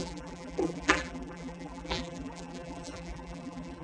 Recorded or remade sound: remade